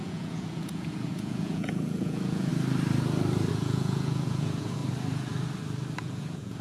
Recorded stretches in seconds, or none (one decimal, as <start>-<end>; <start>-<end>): 2.5-3.5; 4.8-6.0